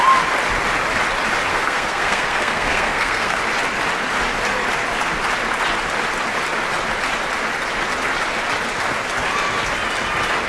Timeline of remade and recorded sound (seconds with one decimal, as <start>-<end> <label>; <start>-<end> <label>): 0.0-1.5 recorded; 1.5-3.4 remade; 3.4-10.5 recorded